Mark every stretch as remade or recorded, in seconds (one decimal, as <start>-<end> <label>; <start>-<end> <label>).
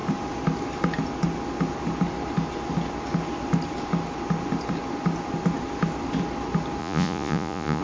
0.0-6.8 recorded; 6.8-7.8 remade